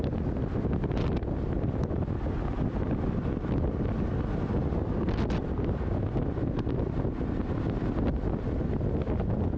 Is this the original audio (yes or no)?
yes